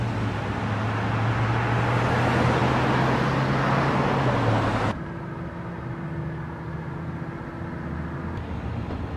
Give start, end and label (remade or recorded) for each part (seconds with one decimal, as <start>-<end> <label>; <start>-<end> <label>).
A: 0.0-9.2 recorded